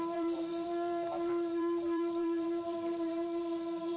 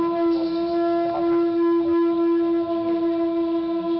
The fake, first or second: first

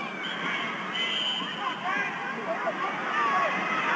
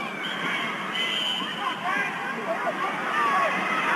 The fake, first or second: second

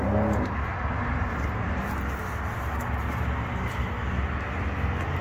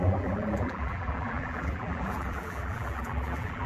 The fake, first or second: second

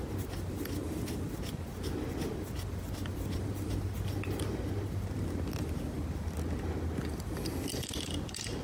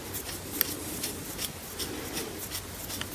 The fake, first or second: first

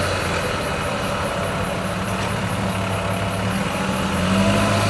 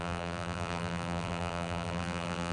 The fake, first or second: second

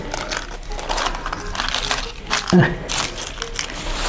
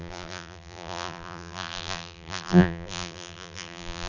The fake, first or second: second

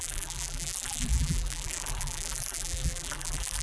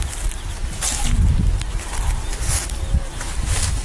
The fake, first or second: first